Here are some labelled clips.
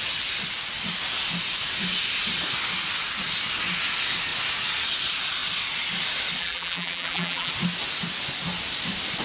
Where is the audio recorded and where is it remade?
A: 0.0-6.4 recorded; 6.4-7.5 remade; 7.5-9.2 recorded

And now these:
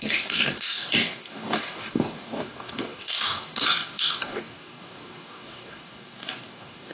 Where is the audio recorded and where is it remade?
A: 0.0-6.9 remade

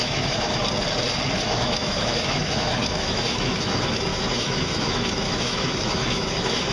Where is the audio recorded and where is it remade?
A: 0.0-0.6 remade; 0.6-1.3 recorded; 1.3-6.7 remade

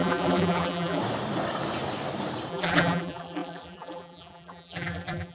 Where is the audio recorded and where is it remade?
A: 0.0-1.0 remade; 1.0-2.5 recorded; 2.5-5.3 remade

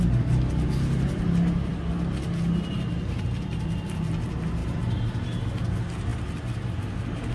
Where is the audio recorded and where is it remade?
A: 0.0-7.3 recorded

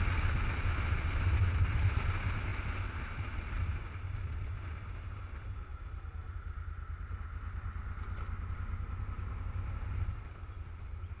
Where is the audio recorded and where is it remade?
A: 0.0-11.2 recorded

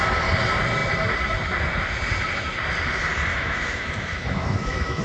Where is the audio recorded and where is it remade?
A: 0.0-3.3 recorded; 3.3-5.0 remade